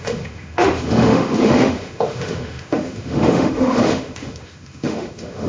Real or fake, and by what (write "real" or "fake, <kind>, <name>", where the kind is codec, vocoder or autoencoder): fake, autoencoder, DAC-VAE